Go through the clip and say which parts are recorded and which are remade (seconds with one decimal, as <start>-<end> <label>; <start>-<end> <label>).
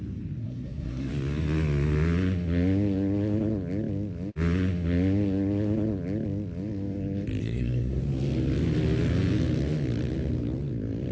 0.0-0.4 recorded; 0.4-1.1 remade; 1.1-7.4 recorded; 7.4-8.0 remade; 8.0-11.1 recorded